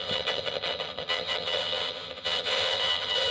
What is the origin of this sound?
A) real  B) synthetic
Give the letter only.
B